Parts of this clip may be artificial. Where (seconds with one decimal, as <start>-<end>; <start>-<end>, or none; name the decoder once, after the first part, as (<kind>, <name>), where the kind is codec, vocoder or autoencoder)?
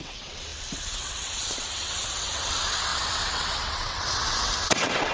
0.0-5.1 (vocoder, WaveNeXt)